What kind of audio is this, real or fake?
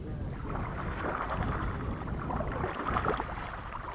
real